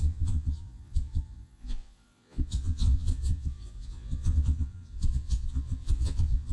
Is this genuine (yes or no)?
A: no